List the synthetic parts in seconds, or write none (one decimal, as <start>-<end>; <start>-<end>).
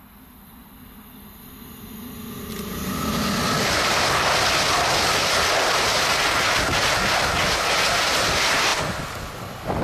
none